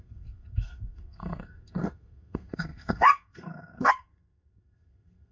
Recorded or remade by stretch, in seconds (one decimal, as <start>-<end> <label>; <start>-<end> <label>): 0.0-5.3 remade